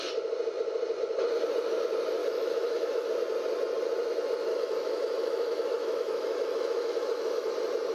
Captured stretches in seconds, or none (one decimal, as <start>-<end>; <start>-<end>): 0.0-2.2; 3.1-4.5; 7.5-7.9